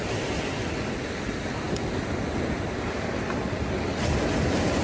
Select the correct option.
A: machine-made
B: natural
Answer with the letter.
A